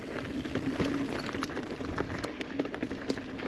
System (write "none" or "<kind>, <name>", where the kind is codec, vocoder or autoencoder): none